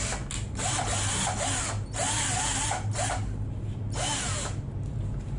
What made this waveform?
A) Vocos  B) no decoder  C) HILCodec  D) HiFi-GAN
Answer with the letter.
B